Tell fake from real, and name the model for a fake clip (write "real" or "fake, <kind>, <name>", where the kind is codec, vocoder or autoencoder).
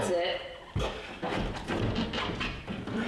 real